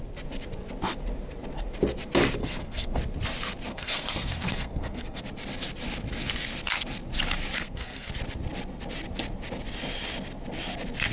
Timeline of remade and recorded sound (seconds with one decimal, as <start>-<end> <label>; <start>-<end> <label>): 0.0-2.4 recorded; 2.4-3.0 remade; 3.0-3.7 recorded; 3.7-5.2 remade; 5.2-7.6 recorded; 7.6-8.1 remade; 8.1-11.1 recorded